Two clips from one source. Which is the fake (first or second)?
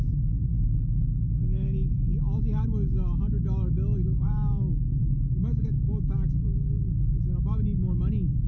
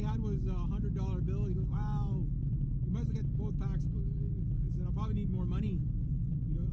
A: first